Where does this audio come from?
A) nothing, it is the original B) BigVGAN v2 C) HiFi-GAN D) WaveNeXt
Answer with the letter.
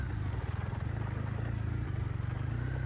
A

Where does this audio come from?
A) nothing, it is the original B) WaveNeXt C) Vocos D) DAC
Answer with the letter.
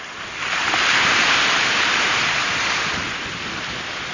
A